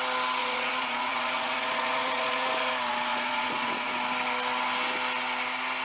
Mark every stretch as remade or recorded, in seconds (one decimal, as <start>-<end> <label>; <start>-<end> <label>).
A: 0.0-0.4 recorded; 0.4-2.7 remade; 2.7-3.1 recorded; 3.1-3.9 remade; 3.9-5.8 recorded